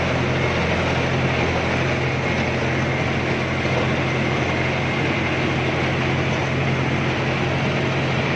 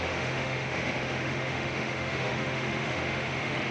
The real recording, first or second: first